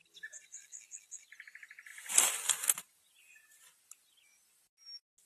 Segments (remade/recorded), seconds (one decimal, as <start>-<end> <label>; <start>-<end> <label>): 0.0-0.6 recorded; 0.6-1.2 remade; 1.2-5.3 recorded